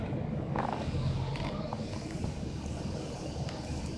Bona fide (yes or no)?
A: no